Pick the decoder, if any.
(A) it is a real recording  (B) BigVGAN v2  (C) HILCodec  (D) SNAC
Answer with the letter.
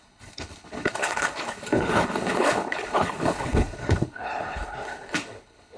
C